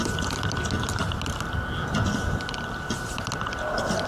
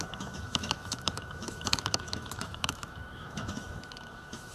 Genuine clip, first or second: first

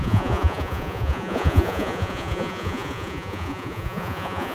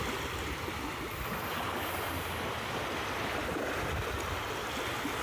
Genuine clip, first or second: second